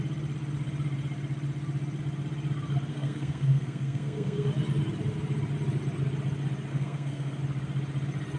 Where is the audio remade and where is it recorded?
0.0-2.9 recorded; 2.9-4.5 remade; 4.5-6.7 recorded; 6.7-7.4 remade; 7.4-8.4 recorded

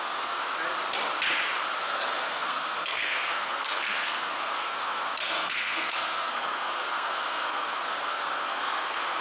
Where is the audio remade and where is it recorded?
0.0-0.4 remade; 0.4-1.8 recorded; 1.8-9.2 remade

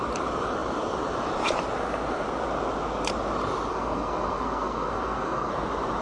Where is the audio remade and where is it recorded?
0.0-3.7 recorded; 3.7-5.5 remade; 5.5-6.0 recorded

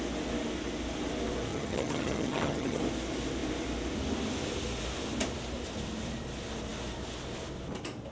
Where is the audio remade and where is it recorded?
0.0-1.5 recorded; 1.5-2.8 remade; 2.8-8.1 recorded

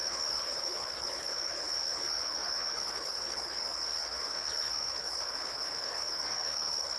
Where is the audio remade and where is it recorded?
0.0-7.0 remade

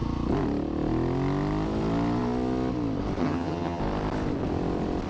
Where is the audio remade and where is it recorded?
0.0-3.2 recorded; 3.2-3.8 remade; 3.8-5.1 recorded

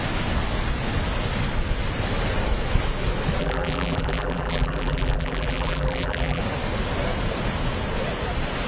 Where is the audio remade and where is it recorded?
0.0-3.4 recorded; 3.4-6.4 remade; 6.4-8.7 recorded